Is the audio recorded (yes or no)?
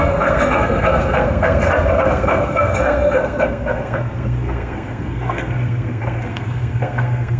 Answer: no